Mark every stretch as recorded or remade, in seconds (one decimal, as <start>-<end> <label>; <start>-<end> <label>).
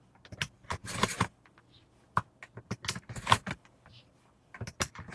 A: 0.0-5.1 recorded